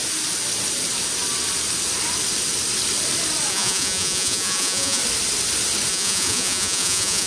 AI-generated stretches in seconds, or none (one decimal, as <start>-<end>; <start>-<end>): 3.5-5.0; 5.9-7.3